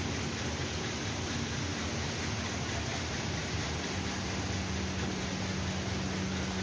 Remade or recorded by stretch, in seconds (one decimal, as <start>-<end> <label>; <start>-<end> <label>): 0.0-6.6 recorded